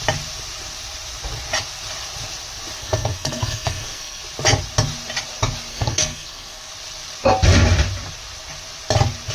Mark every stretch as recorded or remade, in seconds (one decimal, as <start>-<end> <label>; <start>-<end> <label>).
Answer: 0.0-2.8 recorded; 2.8-4.2 remade; 4.2-5.7 recorded; 5.7-6.7 remade; 6.7-9.3 recorded